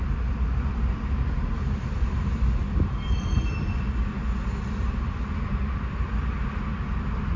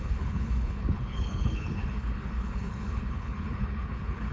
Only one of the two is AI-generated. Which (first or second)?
second